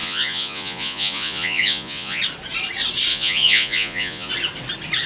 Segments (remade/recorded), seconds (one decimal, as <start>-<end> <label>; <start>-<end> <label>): 0.0-2.2 remade; 2.2-3.1 recorded; 3.1-4.3 remade; 4.3-5.1 recorded